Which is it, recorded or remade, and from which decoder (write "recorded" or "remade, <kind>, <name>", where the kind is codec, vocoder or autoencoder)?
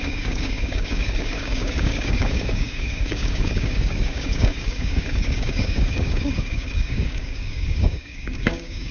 remade, codec, DAC